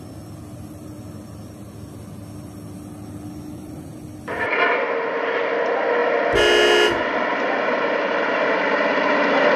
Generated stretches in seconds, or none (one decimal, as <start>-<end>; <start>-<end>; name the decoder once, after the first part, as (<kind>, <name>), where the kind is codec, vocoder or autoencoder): none